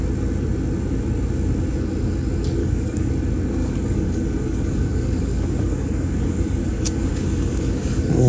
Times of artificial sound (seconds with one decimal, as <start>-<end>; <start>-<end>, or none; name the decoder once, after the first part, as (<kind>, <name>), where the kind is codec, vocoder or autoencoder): 2.6-3.1 (codec, DAC); 3.6-8.3